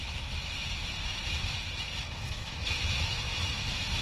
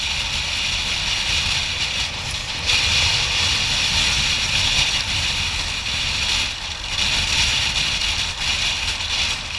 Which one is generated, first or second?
first